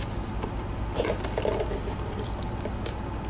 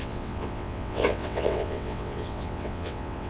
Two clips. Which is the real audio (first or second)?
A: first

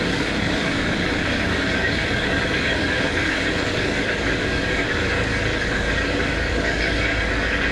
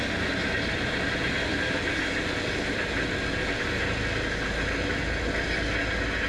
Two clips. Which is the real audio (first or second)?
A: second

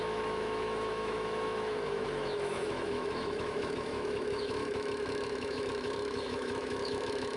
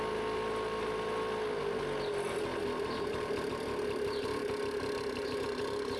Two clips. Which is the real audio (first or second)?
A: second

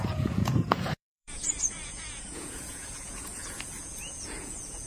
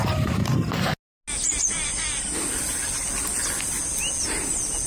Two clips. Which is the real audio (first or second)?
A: second